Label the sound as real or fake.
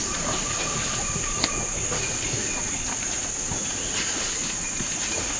fake